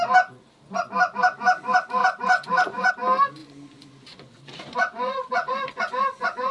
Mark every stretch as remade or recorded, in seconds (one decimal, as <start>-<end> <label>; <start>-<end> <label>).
0.0-2.0 recorded; 2.0-2.9 remade; 2.9-3.4 recorded; 3.4-6.5 remade